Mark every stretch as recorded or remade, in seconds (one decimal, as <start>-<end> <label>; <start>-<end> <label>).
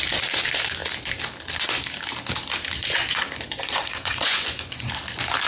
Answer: 0.0-2.8 recorded; 2.8-4.9 remade; 4.9-5.5 recorded